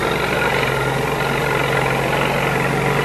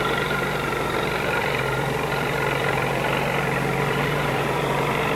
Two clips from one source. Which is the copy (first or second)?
second